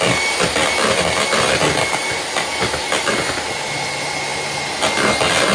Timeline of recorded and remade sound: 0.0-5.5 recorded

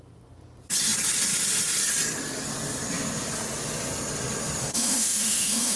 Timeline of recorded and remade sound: 0.0-4.6 recorded; 4.6-5.8 remade